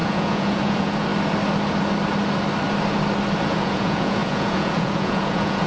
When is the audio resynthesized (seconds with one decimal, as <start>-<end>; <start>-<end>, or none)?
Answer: 0.0-1.1; 3.4-5.7